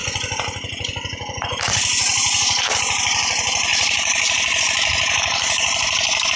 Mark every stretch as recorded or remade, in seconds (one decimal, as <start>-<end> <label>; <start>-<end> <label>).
0.0-1.4 recorded; 1.4-2.2 remade; 2.2-2.8 recorded; 2.8-6.4 remade